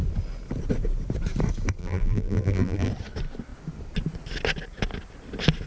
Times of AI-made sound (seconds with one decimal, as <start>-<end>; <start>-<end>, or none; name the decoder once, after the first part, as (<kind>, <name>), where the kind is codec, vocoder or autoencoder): 1.8-2.9 (vocoder, BigVGAN v2)